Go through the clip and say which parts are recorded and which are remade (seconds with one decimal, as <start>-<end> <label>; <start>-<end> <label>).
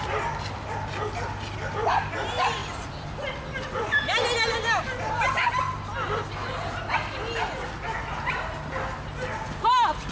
0.0-10.1 recorded